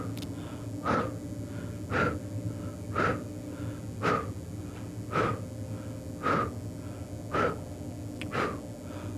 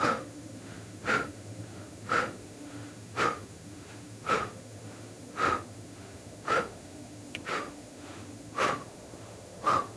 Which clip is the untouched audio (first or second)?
first